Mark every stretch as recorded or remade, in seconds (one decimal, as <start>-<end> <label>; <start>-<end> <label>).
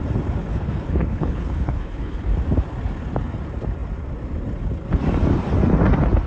0.0-0.5 recorded; 0.5-2.3 remade; 2.3-6.3 recorded